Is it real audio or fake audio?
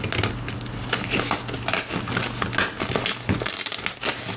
real